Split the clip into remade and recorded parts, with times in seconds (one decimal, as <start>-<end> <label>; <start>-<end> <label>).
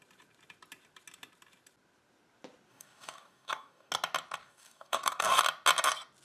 0.0-2.7 recorded; 2.7-3.9 remade; 3.9-4.4 recorded; 4.4-5.4 remade; 5.4-6.2 recorded